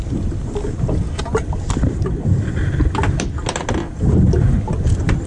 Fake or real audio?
real